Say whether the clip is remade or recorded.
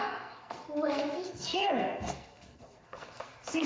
remade